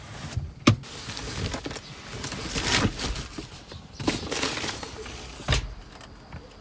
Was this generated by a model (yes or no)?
no